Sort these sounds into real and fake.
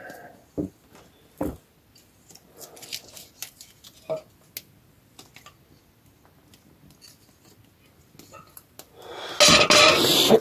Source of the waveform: real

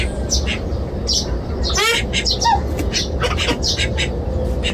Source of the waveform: real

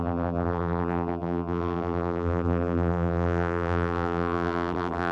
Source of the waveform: fake